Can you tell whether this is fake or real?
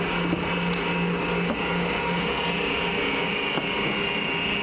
real